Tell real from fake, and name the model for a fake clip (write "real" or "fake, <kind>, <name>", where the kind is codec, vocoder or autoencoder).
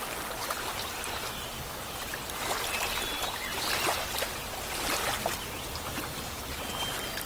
real